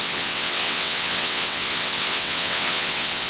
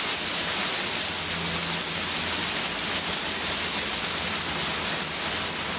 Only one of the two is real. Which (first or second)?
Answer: second